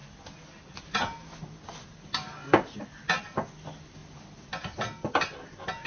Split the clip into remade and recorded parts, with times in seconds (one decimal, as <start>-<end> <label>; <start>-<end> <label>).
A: 0.0-5.9 recorded